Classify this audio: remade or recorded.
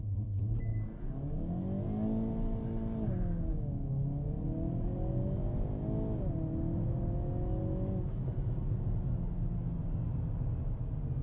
recorded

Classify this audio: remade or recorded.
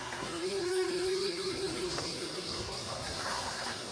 remade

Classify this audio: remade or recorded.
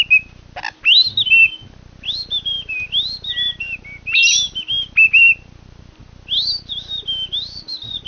recorded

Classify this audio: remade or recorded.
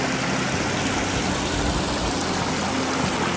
recorded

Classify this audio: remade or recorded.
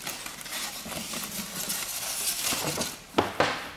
recorded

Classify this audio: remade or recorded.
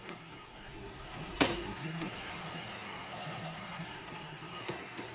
remade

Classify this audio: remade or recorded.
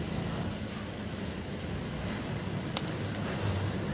recorded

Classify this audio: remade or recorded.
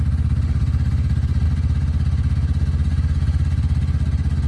recorded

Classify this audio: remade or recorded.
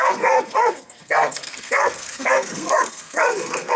remade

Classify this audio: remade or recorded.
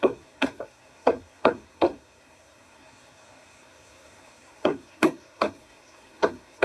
remade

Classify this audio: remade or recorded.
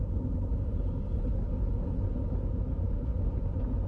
recorded